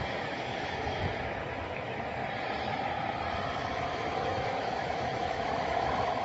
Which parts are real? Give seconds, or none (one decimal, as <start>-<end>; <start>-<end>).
2.2-3.6